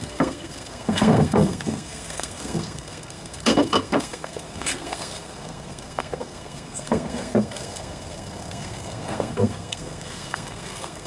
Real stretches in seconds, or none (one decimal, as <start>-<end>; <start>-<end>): none